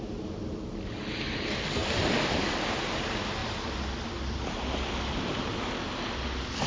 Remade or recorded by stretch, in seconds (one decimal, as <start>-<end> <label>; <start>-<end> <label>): 0.0-6.7 recorded